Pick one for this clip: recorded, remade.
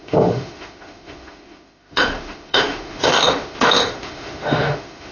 remade